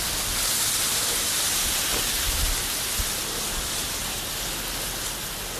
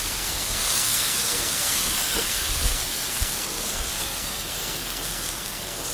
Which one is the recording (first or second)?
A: first